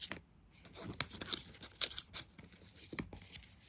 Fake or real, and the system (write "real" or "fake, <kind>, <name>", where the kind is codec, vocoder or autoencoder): real